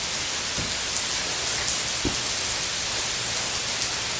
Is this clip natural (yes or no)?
yes